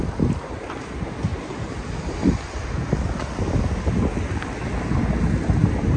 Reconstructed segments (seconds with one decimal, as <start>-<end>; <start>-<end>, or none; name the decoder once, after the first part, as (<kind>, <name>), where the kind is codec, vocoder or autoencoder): none